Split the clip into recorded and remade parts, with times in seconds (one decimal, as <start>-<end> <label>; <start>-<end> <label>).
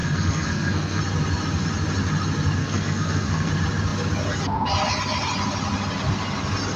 0.0-1.0 remade; 1.0-2.6 recorded; 2.6-3.5 remade; 3.5-6.8 recorded